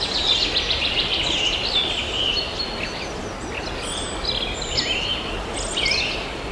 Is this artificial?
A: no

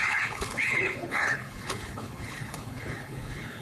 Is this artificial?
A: yes